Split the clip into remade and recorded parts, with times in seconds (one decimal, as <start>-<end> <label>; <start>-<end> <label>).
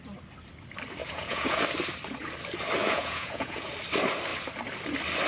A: 0.0-1.0 recorded; 1.0-1.6 remade; 1.6-2.8 recorded; 2.8-3.7 remade; 3.7-5.3 recorded